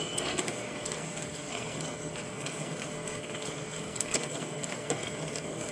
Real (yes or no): no